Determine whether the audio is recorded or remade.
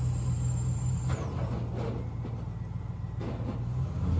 recorded